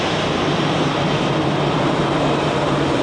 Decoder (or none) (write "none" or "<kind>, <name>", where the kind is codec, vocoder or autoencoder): vocoder, BigVGAN v2